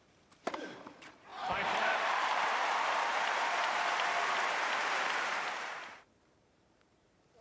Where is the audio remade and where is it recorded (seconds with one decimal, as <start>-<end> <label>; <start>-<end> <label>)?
0.0-7.4 remade